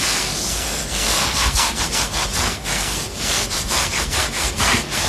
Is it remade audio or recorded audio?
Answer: remade